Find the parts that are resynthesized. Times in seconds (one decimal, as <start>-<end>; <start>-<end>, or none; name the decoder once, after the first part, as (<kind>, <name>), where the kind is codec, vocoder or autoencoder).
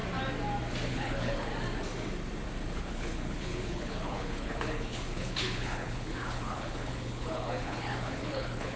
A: 0.9-1.5 (codec, HILCodec); 2.7-8.8